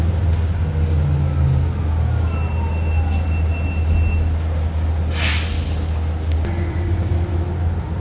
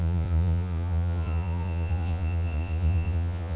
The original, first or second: first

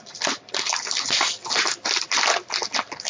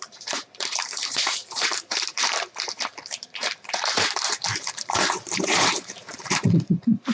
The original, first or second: first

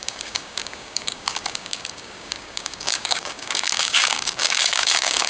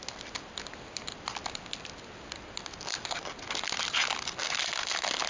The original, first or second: second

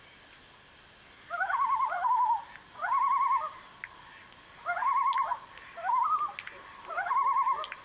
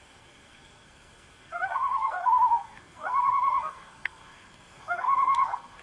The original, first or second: first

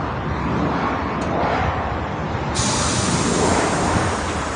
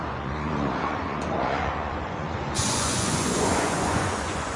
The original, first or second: first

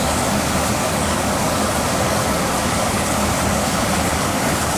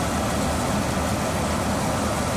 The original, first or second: second